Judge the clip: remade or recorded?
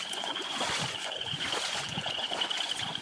remade